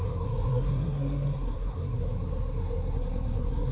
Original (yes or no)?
no